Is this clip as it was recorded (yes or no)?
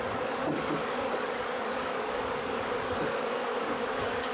no